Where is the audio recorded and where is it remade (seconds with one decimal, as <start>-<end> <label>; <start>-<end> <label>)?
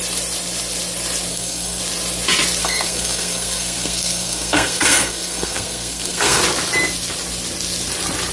0.0-1.3 recorded; 1.3-1.8 remade; 1.8-2.6 recorded; 2.6-6.4 remade; 6.4-8.3 recorded